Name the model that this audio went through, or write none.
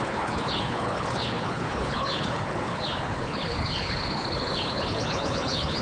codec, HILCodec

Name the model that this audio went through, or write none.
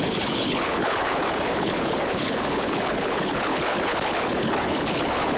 codec, HILCodec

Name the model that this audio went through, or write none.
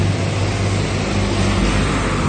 none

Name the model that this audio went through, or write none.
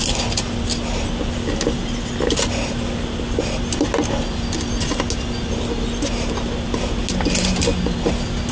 none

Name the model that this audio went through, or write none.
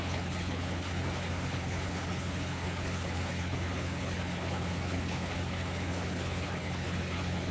codec, HILCodec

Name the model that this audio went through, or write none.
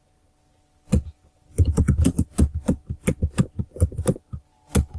none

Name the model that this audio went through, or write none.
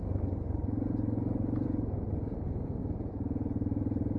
none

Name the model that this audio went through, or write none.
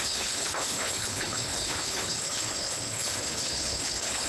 codec, HILCodec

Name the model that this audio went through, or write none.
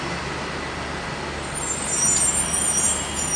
none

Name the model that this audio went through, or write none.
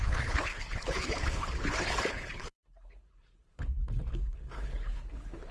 codec, HILCodec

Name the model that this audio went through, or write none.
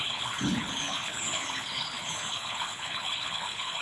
codec, HILCodec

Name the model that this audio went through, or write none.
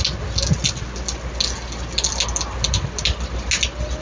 none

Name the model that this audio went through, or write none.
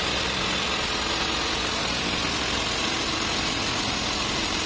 none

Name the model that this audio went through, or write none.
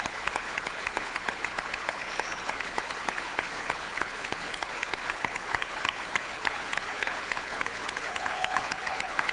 codec, HILCodec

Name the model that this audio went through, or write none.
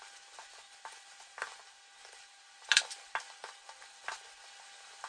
none